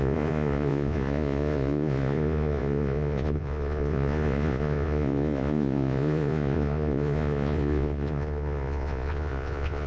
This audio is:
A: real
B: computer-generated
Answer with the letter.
B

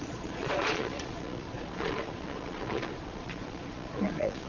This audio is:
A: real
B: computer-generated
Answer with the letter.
B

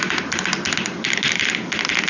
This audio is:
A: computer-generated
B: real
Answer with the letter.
B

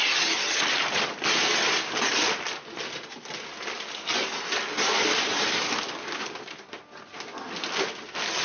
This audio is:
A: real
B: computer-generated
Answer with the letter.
A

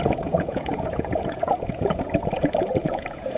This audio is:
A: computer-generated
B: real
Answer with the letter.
A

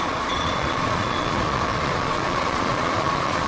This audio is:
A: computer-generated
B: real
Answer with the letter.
A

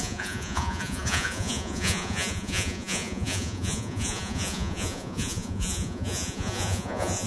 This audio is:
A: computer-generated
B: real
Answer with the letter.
A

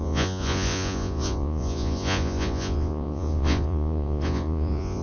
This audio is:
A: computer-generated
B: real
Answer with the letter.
A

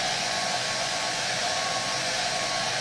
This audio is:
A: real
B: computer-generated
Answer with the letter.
B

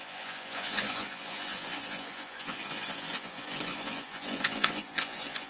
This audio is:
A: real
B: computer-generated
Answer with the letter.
B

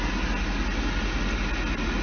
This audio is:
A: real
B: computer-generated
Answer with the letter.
A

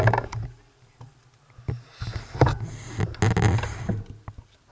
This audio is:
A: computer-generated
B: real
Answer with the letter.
B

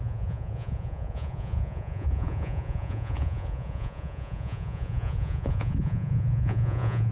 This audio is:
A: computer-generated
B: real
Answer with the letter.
A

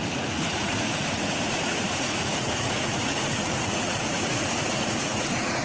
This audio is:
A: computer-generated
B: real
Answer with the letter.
A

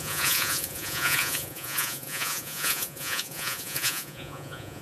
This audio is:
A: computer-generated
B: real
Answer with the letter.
A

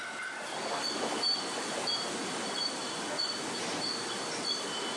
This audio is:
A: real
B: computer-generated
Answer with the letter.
A